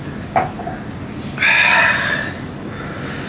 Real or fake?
real